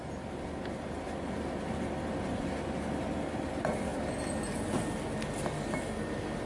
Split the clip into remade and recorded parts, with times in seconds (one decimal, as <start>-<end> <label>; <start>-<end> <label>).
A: 0.0-6.5 recorded